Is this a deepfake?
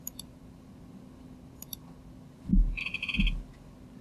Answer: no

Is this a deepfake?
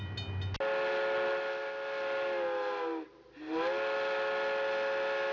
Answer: no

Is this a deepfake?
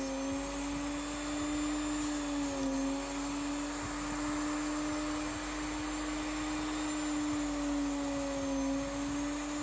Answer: no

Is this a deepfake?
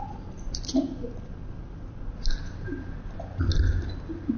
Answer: no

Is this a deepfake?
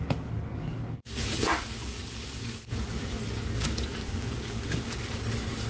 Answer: yes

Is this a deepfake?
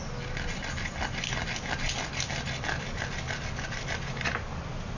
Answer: no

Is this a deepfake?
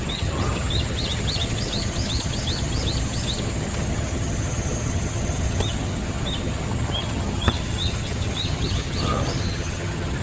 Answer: yes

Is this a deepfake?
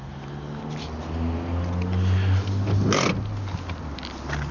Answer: no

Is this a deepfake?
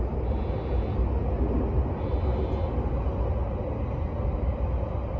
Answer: no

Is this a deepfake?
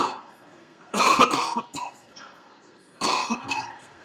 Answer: yes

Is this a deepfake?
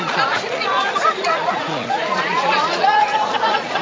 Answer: yes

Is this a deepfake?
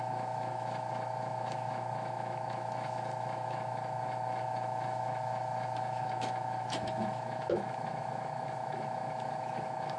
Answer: yes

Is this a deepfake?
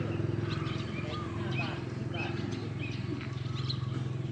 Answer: no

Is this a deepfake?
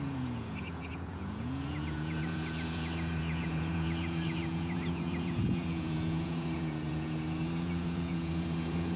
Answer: yes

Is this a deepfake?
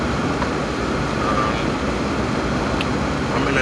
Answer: no